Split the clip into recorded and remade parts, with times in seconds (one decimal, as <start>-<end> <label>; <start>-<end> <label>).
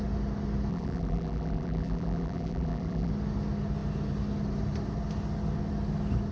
0.0-0.7 recorded; 0.7-3.1 remade; 3.1-6.3 recorded